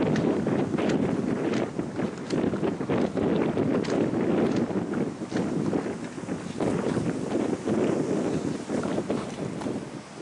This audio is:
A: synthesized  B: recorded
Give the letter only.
B